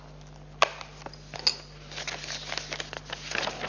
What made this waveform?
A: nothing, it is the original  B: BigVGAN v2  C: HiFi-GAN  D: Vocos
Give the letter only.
A